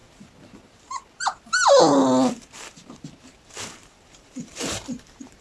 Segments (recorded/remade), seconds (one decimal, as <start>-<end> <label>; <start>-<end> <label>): 0.0-3.2 recorded; 3.2-5.4 remade